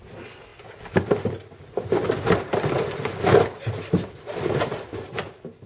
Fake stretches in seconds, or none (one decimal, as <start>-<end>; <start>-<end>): none